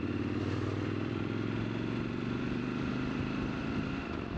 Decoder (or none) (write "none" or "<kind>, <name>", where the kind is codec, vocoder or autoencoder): vocoder, BigVGAN v2